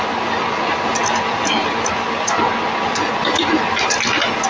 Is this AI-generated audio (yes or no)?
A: no